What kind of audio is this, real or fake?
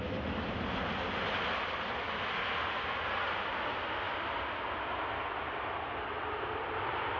real